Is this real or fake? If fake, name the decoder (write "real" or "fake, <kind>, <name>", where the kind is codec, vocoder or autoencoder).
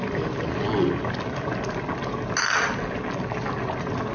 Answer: real